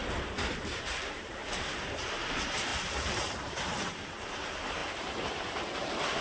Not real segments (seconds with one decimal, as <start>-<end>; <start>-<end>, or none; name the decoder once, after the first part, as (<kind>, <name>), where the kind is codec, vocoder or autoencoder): 0.7-6.2 (vocoder, BigVGAN v2)